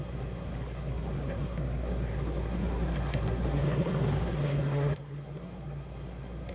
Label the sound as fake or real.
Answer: fake